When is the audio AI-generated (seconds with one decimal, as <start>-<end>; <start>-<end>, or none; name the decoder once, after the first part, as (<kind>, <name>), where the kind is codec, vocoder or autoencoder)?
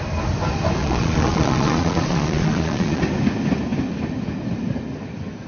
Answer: 0.8-3.0 (vocoder, Vocos)